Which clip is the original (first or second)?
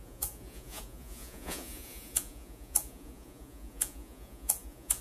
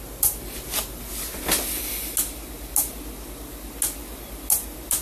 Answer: second